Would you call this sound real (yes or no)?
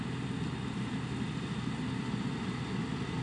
yes